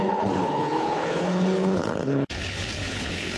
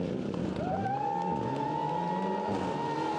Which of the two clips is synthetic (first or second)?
first